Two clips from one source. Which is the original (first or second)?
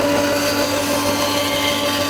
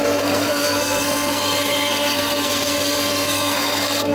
first